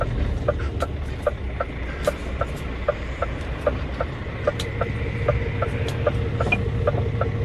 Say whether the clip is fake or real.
real